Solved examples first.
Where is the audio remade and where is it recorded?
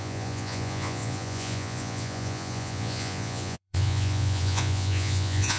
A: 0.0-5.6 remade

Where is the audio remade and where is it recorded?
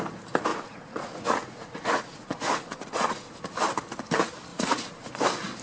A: 0.0-0.5 recorded; 0.5-3.3 remade; 3.3-4.5 recorded; 4.5-5.1 remade; 5.1-5.6 recorded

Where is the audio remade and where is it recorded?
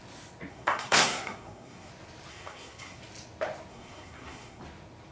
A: 0.0-0.5 recorded; 0.5-1.9 remade; 1.9-2.3 recorded; 2.3-3.0 remade; 3.0-3.7 recorded; 3.7-4.6 remade; 4.6-5.1 recorded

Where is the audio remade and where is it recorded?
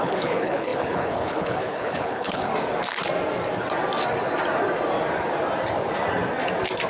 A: 0.0-2.5 remade; 2.5-6.9 recorded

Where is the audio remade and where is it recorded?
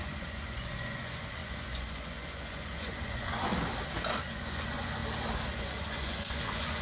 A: 0.0-3.5 remade; 3.5-4.2 recorded; 4.2-5.0 remade; 5.0-5.5 recorded; 5.5-6.8 remade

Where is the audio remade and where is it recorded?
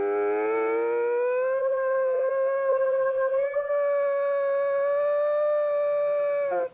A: 0.0-1.6 recorded; 1.6-2.3 remade; 2.3-2.7 recorded; 2.7-3.7 remade; 3.7-6.7 recorded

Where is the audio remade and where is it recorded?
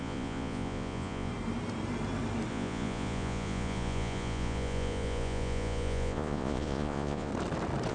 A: 0.0-1.3 remade; 1.3-2.5 recorded; 2.5-7.3 remade; 7.3-7.9 recorded